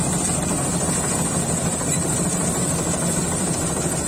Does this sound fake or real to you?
real